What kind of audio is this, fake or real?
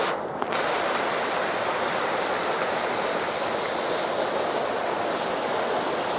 real